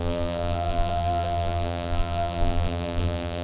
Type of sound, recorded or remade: remade